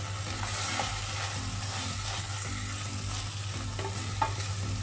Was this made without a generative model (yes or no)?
yes